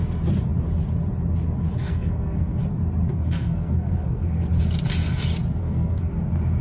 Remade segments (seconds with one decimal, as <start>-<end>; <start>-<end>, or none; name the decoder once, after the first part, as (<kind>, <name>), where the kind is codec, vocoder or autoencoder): 1.8-2.6 (codec, SNAC); 3.1-4.5; 5.6-6.1